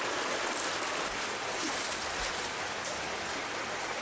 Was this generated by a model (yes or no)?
no